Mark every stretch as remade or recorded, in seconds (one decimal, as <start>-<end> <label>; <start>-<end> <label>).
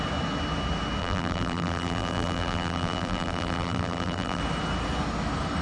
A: 0.0-1.0 recorded; 1.0-4.4 remade; 4.4-5.6 recorded